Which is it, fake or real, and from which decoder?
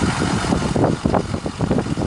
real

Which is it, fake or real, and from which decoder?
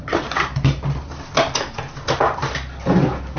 real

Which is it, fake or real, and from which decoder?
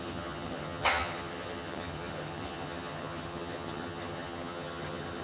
fake, vocoder, HiFi-GAN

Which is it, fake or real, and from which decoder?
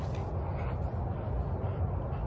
real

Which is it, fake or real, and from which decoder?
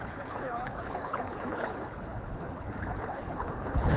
fake, codec, HILCodec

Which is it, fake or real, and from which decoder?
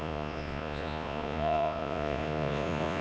fake, vocoder, Vocos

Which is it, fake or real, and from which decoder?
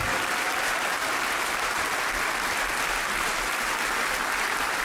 real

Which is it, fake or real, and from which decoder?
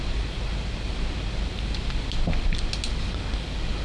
real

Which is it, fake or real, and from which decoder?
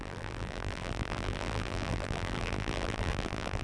fake, vocoder, BigVGAN v2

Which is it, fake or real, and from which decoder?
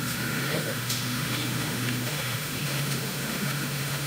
fake, autoencoder, DAC-VAE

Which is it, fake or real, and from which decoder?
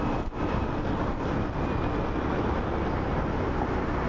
real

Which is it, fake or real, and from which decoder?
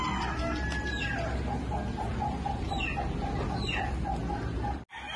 real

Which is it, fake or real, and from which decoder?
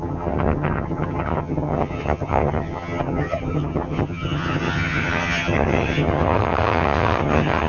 fake, vocoder, HiFi-GAN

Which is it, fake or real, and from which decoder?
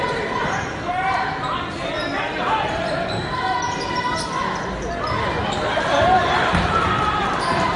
real